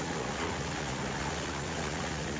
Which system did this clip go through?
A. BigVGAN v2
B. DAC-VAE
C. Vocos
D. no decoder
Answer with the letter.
C